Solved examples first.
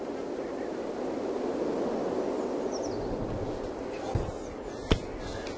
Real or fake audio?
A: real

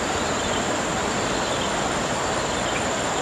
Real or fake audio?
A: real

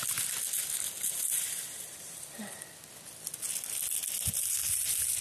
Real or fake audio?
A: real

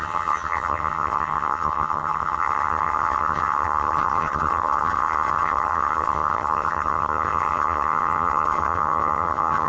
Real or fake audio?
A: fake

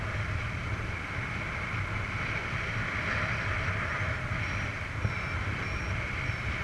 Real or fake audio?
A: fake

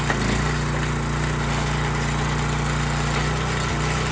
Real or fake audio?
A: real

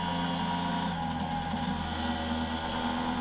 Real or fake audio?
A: real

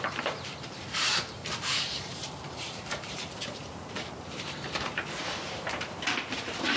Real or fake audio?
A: fake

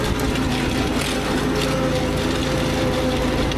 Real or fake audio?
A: real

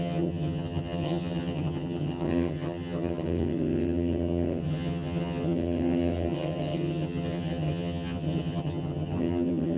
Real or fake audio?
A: fake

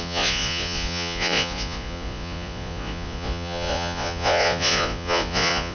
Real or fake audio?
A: fake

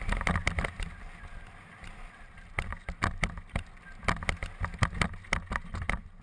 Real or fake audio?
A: real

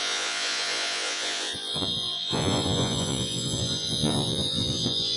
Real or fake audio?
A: fake